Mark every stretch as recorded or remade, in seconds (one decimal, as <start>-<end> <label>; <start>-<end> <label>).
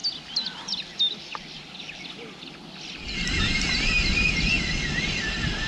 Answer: 0.0-5.7 recorded